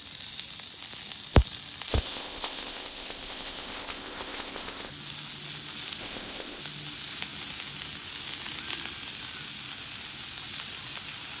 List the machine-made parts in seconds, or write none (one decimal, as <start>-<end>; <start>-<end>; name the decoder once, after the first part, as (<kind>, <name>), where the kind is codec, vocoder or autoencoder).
1.9-4.9 (codec, ZipCodec); 6.0-6.6